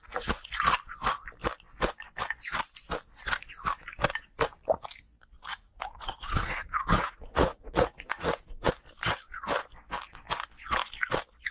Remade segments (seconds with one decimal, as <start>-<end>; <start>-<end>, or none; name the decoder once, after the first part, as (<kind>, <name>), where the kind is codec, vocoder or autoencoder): 0.0-0.6 (vocoder, Vocos); 5.5-8.7